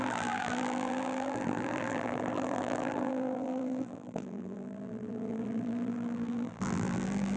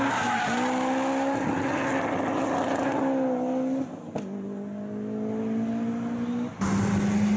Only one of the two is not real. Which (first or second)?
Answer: first